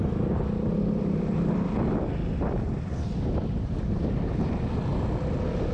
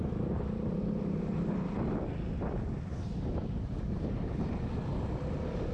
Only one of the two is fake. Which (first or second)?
second